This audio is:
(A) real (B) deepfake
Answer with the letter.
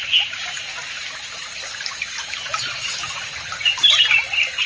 A